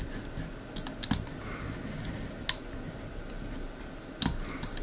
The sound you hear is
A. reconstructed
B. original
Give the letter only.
B